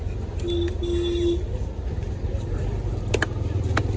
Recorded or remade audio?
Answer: recorded